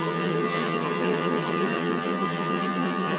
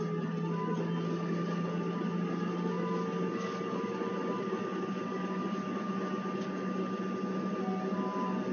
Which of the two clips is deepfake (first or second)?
first